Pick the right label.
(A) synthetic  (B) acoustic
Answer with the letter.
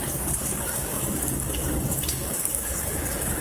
A